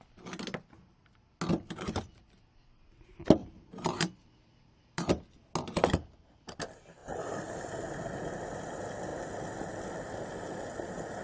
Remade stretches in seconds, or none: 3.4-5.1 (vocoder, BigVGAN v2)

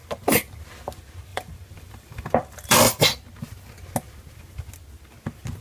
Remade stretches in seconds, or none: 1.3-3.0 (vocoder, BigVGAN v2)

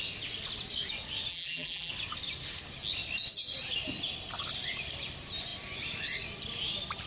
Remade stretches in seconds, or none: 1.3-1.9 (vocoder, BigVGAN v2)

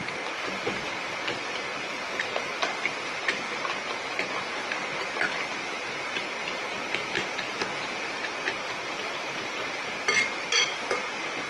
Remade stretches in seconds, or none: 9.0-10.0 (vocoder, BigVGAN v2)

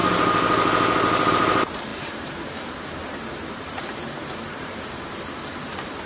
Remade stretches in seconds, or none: 1.3-6.1 (vocoder, BigVGAN v2)

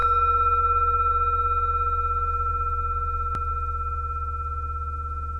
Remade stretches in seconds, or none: none

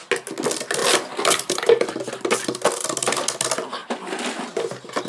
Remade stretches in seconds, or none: 0.8-2.1 (vocoder, BigVGAN v2)